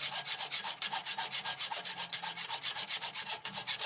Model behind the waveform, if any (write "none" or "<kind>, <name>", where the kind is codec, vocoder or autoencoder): none